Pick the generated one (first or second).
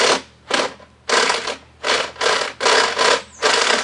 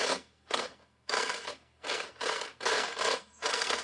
second